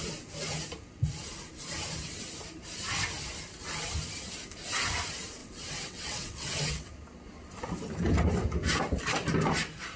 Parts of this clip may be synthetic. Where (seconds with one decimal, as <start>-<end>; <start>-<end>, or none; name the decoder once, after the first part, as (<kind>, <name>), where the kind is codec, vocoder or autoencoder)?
5.4-6.9 (vocoder, WaveNeXt)